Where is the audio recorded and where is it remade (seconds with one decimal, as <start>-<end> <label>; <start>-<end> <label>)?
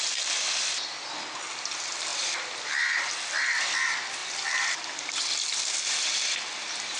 0.0-2.1 recorded; 2.1-3.1 remade; 3.1-4.2 recorded; 4.2-5.6 remade; 5.6-7.0 recorded